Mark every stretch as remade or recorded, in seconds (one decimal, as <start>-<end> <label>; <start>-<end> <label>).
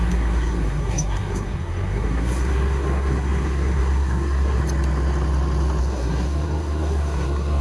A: 0.0-4.6 remade; 4.6-5.8 recorded; 5.8-7.6 remade